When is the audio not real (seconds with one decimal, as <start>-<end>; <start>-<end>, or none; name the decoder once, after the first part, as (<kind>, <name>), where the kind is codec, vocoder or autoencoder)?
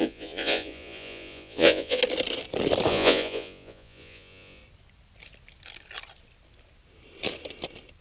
0.0-2.0 (vocoder, Vocos); 2.9-4.6